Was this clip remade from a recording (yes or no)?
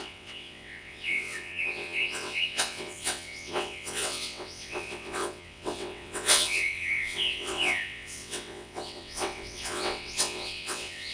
yes